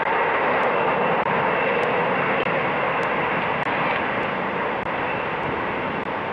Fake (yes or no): no